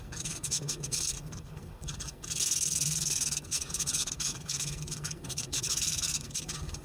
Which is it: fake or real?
fake